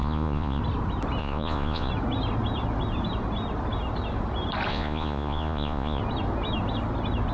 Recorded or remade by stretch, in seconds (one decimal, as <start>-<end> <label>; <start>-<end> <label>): 0.0-0.6 remade; 0.6-1.2 recorded; 1.2-1.9 remade; 1.9-4.7 recorded; 4.7-6.0 remade; 6.0-7.3 recorded